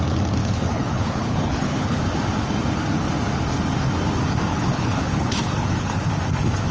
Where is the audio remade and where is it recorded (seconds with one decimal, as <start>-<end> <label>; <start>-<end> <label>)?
0.0-0.4 recorded; 0.4-2.0 remade; 2.0-4.5 recorded; 4.5-6.1 remade; 6.1-6.7 recorded